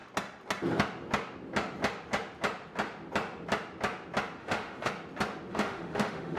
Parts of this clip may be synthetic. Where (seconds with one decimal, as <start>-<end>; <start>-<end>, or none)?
4.4-4.9; 5.5-6.4